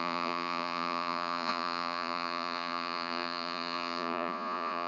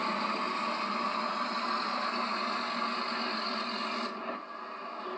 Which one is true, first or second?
second